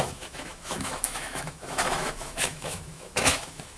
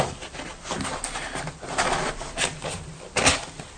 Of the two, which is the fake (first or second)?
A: first